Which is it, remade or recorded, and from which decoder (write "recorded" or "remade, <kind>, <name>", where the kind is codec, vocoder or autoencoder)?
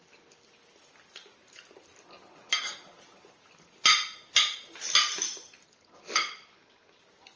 recorded